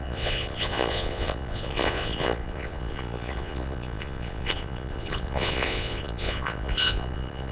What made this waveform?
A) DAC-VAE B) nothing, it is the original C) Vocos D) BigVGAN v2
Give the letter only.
C